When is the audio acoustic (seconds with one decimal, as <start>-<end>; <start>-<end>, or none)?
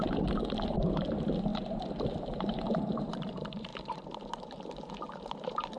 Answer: 1.5-2.1